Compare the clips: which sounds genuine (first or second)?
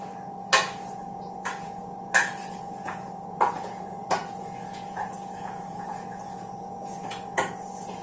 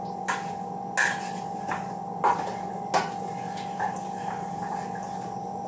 second